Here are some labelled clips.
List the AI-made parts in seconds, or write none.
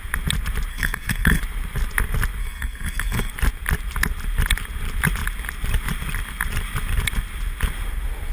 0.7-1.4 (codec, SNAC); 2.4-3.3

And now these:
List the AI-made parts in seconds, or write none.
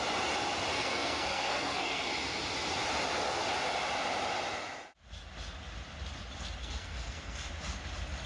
0.7-2.1 (codec, SNAC); 6.6-7.5